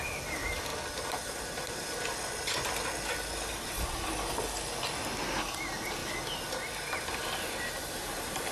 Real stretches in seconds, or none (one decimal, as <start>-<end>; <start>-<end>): 0.0-7.8